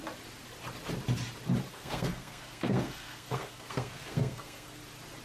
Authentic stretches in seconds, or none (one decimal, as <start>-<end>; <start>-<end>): 0.0-1.7; 4.8-5.2